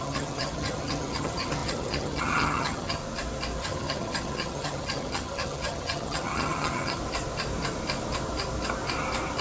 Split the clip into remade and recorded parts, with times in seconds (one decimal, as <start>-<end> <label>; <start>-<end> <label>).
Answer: 0.0-3.0 remade; 3.0-3.6 recorded; 3.6-7.0 remade; 7.0-9.4 recorded